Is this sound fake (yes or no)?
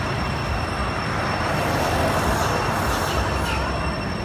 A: no